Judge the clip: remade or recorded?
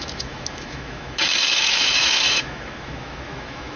remade